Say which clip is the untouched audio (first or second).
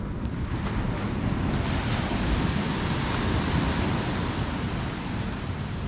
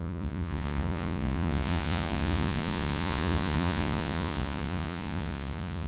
first